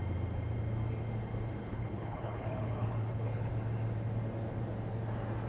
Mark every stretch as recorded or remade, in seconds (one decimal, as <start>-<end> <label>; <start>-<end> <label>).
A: 0.0-1.6 recorded; 1.6-3.5 remade; 3.5-5.5 recorded